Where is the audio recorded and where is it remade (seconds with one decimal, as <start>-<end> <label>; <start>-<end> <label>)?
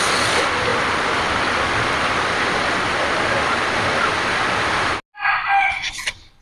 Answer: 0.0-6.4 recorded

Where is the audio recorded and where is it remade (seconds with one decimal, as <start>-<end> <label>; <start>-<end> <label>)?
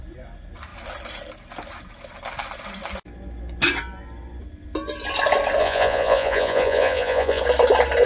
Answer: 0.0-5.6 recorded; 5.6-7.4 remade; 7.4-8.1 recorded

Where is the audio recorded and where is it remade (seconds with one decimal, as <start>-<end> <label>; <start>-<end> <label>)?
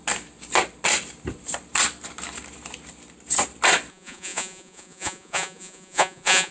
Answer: 0.0-3.9 recorded; 3.9-6.5 remade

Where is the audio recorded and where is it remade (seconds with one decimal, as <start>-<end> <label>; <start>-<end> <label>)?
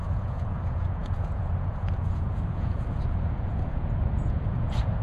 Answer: 0.0-5.0 remade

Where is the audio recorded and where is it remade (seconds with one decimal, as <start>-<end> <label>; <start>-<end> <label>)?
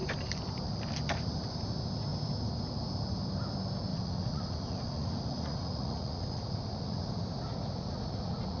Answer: 0.0-3.9 recorded; 3.9-7.1 remade; 7.1-7.5 recorded; 7.5-8.6 remade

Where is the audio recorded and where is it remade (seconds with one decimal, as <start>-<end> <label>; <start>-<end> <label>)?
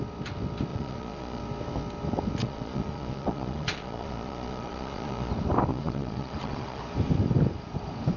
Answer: 0.0-0.7 recorded; 0.7-1.4 remade; 1.4-2.4 recorded; 2.4-5.3 remade; 5.3-5.7 recorded; 5.7-6.8 remade; 6.8-8.2 recorded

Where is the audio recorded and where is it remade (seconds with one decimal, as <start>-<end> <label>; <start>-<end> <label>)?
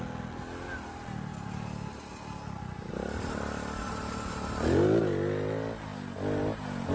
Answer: 0.0-6.9 recorded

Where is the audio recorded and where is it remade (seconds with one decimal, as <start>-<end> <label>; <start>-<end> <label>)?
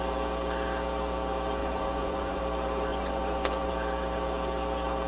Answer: 0.0-1.6 recorded; 1.6-2.4 remade; 2.4-2.9 recorded; 2.9-3.7 remade; 3.7-5.1 recorded